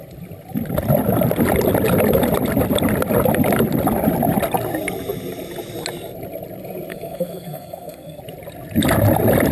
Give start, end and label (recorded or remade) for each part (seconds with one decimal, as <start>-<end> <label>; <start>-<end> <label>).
0.0-6.9 recorded; 6.9-8.2 remade; 8.2-9.5 recorded